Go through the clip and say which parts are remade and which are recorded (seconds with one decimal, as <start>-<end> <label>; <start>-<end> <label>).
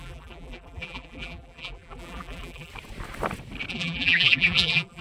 0.0-2.7 remade; 2.7-3.7 recorded; 3.7-5.0 remade